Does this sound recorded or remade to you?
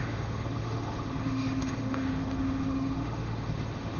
remade